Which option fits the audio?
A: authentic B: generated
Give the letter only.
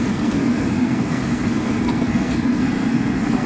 B